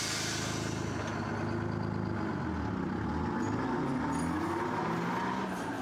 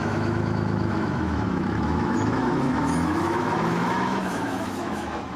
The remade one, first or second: second